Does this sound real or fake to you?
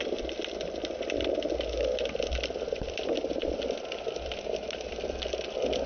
real